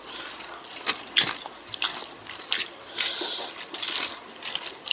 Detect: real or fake real